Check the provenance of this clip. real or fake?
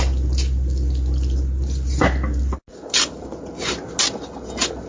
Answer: real